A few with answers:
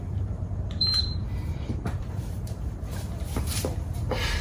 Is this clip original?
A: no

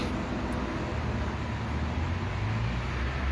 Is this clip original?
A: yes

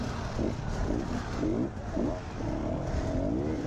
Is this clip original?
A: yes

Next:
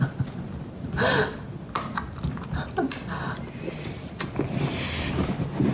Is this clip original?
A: yes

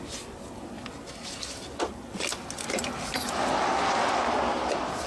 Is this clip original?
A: yes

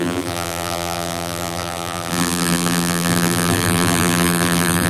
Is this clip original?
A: no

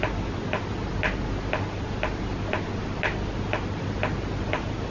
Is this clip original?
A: yes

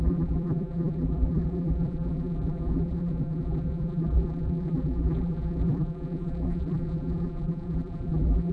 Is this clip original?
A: no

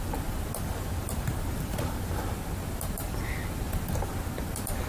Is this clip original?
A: yes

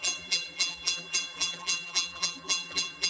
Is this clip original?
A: no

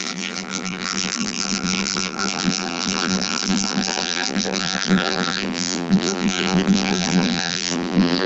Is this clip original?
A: no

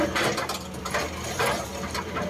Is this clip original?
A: yes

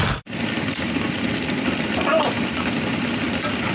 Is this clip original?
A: no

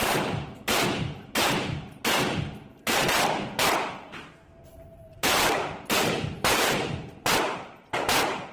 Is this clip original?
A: no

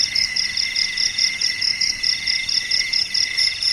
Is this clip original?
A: no